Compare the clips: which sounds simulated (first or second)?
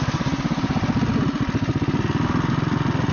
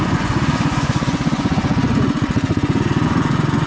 second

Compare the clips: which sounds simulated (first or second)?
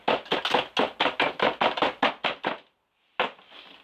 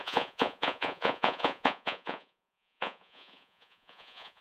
second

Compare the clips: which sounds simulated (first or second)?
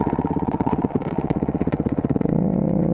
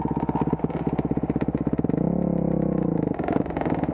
first